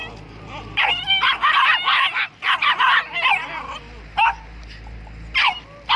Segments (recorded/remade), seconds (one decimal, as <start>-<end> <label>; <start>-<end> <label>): 0.0-6.0 recorded

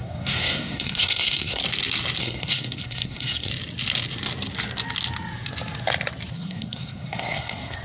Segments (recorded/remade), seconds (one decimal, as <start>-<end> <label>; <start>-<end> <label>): 0.0-1.6 remade; 1.6-2.2 recorded; 2.2-3.5 remade; 3.5-6.3 recorded; 6.3-7.8 remade

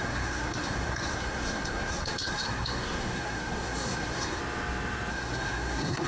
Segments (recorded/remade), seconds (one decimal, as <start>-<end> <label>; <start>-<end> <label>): 0.0-4.4 remade; 4.4-5.1 recorded; 5.1-6.1 remade

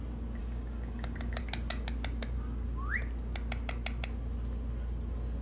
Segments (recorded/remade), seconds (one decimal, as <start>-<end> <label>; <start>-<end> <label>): 0.0-0.4 recorded; 0.4-1.4 remade; 1.4-5.4 recorded

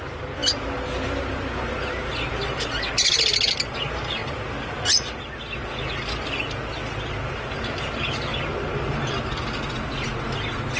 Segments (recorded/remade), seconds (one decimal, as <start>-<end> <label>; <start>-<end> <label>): 0.0-10.8 recorded

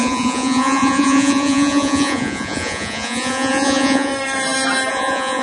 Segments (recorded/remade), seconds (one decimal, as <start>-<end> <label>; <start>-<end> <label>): 0.0-4.1 remade; 4.1-4.9 recorded; 4.9-5.4 remade

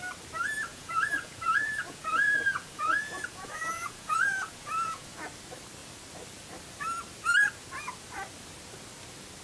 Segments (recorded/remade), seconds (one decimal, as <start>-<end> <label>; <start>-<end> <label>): 0.0-0.7 recorded; 0.7-5.2 remade; 5.2-9.4 recorded